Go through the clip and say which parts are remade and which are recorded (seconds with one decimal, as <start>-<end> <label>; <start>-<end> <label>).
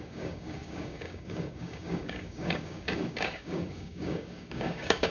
0.0-5.1 remade